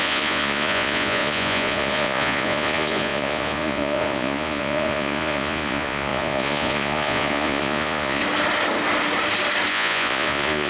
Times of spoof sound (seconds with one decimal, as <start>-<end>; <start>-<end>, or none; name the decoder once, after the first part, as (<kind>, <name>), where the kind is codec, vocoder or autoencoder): 0.0-8.2 (vocoder, Vocos); 9.7-10.7